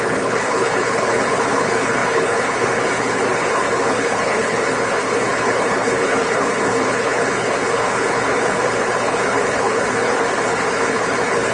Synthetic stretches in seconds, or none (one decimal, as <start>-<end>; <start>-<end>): 0.0-11.5